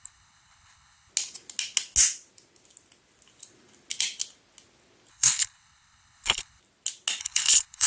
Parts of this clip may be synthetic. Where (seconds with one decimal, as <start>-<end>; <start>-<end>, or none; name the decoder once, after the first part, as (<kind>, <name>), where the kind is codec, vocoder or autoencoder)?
0.0-1.1 (codec, HILCodec); 5.1-6.6; 7.2-7.9